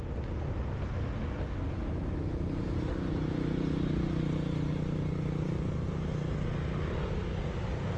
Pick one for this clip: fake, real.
real